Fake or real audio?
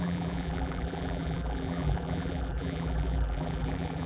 fake